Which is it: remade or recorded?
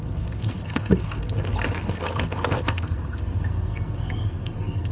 remade